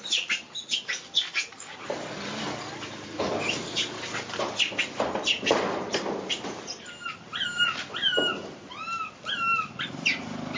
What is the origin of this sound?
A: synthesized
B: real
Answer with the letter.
B